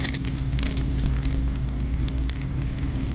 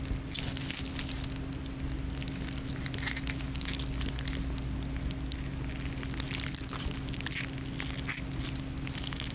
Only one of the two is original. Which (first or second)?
second